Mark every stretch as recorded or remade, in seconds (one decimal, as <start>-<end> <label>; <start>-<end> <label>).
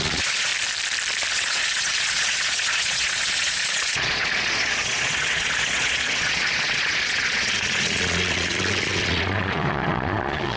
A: 0.0-0.5 remade; 0.5-1.3 recorded; 1.3-10.6 remade